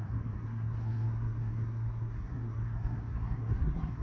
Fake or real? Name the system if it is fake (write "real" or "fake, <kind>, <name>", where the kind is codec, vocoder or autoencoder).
fake, codec, SNAC